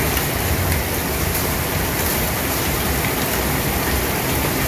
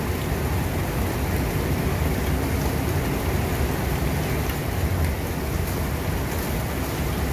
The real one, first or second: second